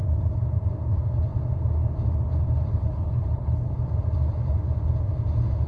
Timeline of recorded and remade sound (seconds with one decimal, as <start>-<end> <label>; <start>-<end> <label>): 0.0-2.7 recorded; 2.7-3.7 remade; 3.7-5.7 recorded